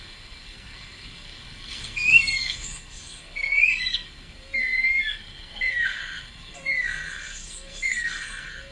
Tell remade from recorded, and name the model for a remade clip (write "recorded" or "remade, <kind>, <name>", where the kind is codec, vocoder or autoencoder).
remade, codec, SNAC